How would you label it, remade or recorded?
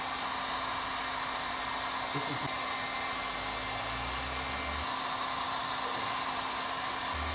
recorded